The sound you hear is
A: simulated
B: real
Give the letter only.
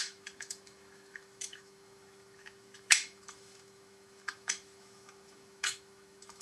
A